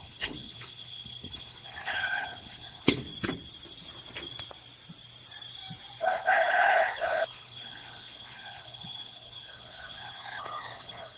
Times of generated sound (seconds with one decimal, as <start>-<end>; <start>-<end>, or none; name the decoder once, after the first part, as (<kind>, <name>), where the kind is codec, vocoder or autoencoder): 0.0-3.1 (codec, HILCodec); 6.0-11.2